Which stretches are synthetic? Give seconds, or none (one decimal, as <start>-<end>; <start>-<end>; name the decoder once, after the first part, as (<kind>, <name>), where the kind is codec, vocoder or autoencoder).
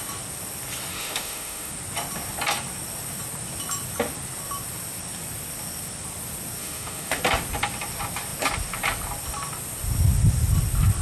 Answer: 0.9-1.7 (autoencoder, DAC-VAE); 6.6-7.2